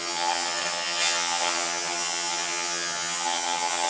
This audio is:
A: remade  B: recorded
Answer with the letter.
A